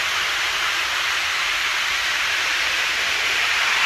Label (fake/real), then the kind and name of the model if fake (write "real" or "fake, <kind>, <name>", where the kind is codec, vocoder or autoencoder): real